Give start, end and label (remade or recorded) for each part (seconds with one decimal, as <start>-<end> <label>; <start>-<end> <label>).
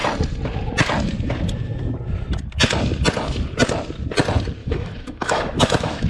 0.0-4.6 recorded; 4.6-6.1 remade